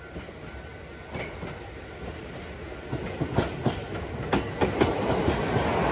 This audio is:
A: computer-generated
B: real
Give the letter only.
B